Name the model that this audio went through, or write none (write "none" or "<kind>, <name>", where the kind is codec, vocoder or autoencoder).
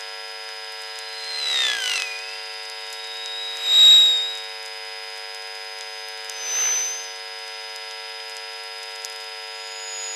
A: none